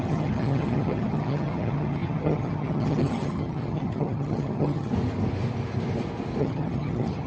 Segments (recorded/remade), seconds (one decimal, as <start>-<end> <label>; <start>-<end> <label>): 0.0-4.9 remade; 4.9-6.4 recorded; 6.4-7.3 remade